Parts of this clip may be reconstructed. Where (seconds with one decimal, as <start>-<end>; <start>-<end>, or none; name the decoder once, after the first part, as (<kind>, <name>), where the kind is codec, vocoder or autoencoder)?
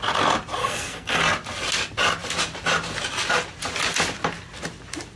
0.6-1.2 (codec, SNAC)